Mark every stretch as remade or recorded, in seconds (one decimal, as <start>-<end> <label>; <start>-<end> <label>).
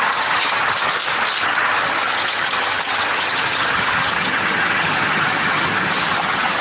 0.0-0.9 remade; 0.9-1.4 recorded; 1.4-6.6 remade